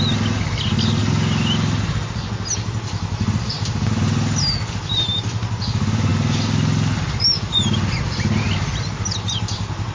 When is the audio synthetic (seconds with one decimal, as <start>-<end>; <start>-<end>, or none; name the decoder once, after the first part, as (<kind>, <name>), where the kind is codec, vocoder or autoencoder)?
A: none